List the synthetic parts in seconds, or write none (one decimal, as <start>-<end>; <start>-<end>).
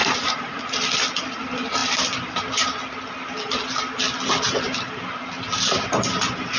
0.0-0.6